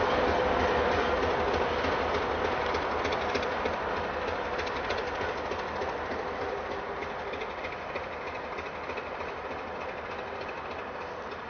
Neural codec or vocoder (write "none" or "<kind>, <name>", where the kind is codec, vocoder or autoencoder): none